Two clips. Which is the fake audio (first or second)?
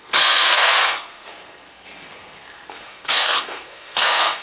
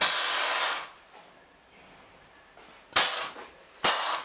first